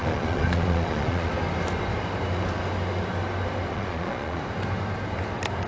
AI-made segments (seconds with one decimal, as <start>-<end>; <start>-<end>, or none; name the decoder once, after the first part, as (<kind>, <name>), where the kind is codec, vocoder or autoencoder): 0.0-1.3 (vocoder, Vocos); 3.7-4.4